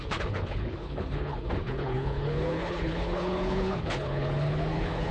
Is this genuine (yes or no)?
no